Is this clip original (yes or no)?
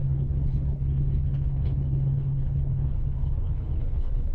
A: no